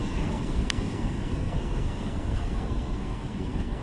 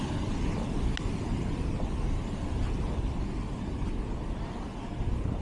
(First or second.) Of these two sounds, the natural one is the second